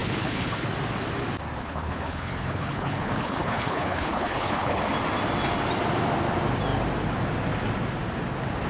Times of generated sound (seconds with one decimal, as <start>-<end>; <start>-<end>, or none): 0.0-0.7; 1.6-4.8